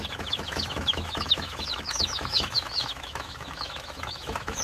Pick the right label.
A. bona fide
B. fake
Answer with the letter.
B